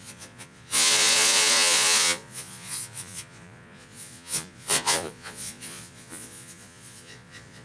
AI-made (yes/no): yes